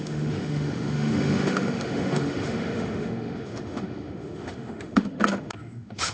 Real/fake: fake